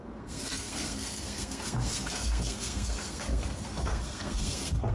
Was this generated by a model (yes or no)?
yes